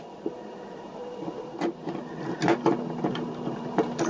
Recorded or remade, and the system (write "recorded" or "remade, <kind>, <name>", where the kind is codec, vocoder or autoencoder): recorded